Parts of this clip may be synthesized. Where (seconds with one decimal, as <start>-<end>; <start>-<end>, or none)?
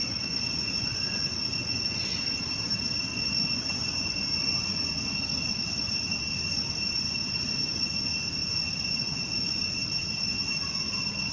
0.0-2.1; 3.1-4.9; 8.4-9.8